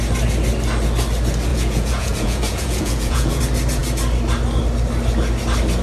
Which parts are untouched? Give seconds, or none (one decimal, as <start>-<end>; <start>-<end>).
0.0-1.5; 3.4-5.8